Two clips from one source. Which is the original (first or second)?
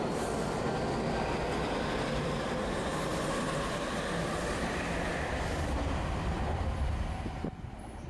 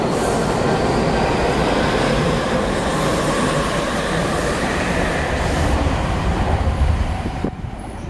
first